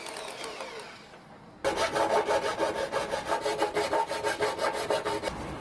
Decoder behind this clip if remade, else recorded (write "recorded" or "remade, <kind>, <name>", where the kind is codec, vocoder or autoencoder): recorded